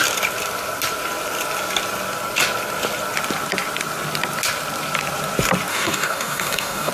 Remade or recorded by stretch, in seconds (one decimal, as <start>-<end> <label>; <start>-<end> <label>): 0.0-5.7 recorded; 5.7-6.9 remade